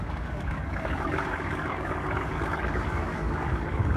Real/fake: fake